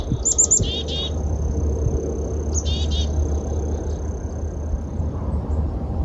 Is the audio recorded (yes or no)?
yes